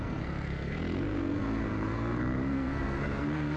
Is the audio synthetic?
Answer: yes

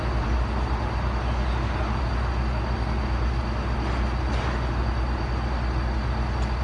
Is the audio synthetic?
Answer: no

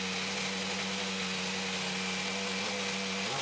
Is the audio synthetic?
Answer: no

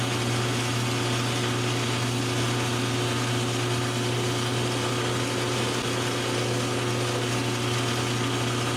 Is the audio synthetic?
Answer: no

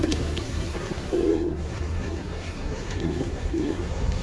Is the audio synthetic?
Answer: yes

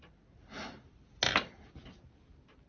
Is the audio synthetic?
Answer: no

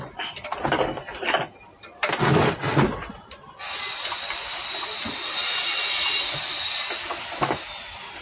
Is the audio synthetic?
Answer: no